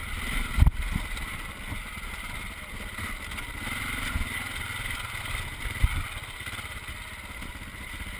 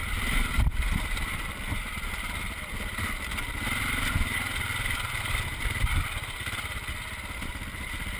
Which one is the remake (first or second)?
second